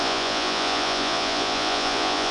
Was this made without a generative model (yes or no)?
no